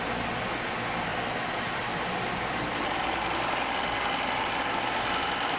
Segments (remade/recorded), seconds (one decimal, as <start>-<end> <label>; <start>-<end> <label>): 0.0-1.1 recorded; 1.1-4.5 remade; 4.5-5.6 recorded